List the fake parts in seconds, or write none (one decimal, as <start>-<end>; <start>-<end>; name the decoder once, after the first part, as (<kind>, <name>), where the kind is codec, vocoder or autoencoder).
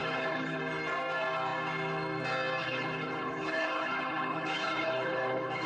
0.0-0.6 (codec, HILCodec); 2.6-5.7